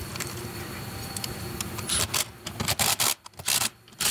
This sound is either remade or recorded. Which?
recorded